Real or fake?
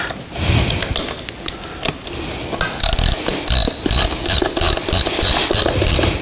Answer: real